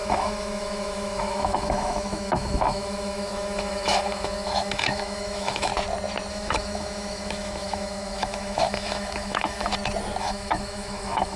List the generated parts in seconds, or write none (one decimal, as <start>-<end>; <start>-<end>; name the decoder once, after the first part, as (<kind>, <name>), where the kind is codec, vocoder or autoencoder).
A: 0.0-5.7 (autoencoder, DAC-VAE); 6.3-9.7; 10.2-11.4